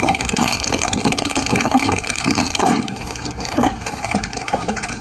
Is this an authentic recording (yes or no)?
no